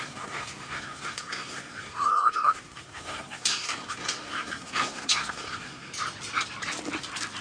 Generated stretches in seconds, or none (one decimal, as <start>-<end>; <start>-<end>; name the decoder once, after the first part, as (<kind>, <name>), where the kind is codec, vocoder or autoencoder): 0.0-5.9 (codec, SNAC)